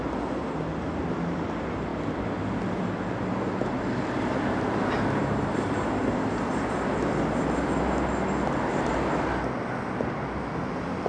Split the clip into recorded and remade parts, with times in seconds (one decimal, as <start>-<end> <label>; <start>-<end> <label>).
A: 0.0-11.1 recorded